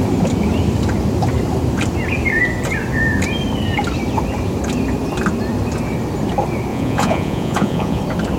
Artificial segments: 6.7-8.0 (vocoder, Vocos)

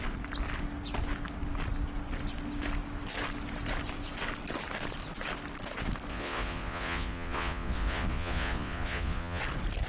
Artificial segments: 6.1-9.4 (vocoder, Vocos)

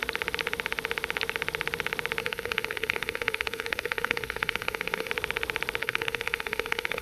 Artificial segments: 2.2-5.1 (codec, SNAC); 5.8-7.0

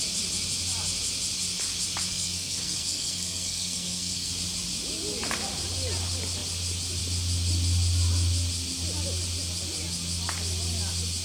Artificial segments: 2.1-4.3 (codec, SNAC)

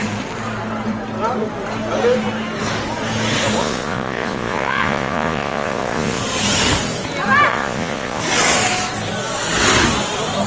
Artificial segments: 3.6-6.2 (vocoder, Vocos); 7.5-8.2

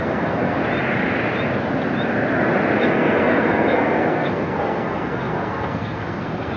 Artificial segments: 0.0-0.6 (codec, SNAC); 2.8-6.6

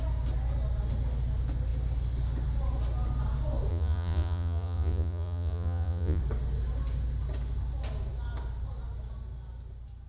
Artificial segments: 3.7-6.2 (vocoder, Vocos)